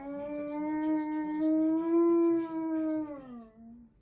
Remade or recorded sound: recorded